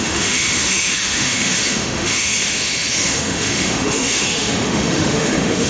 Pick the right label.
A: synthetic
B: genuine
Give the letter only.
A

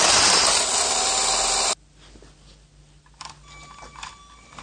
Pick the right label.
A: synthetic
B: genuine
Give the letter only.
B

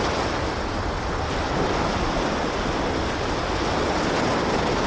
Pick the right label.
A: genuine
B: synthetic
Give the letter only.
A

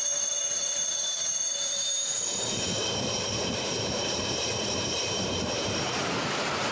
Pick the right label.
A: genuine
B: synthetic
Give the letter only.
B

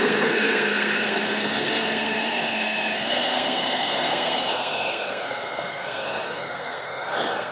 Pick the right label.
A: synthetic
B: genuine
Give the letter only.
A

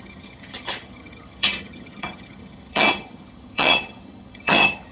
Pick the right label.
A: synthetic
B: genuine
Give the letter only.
A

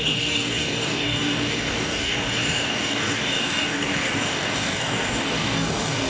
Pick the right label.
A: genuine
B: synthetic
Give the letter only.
B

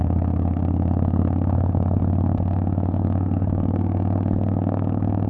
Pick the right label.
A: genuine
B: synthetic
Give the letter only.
B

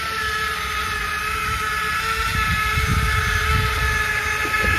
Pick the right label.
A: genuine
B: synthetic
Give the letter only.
A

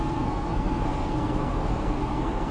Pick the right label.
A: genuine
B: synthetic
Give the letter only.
B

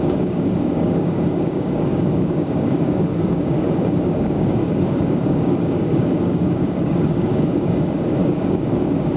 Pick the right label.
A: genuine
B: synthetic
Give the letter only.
B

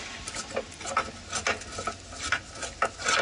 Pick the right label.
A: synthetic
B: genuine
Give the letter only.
B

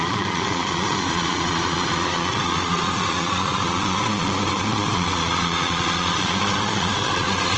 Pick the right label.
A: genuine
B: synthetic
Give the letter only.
B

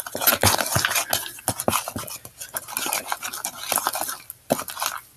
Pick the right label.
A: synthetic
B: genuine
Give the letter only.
B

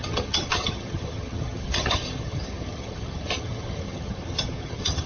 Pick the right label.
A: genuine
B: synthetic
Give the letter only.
B